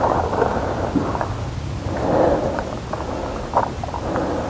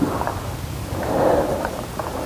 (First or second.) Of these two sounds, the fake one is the second